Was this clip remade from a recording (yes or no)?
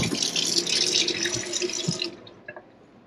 no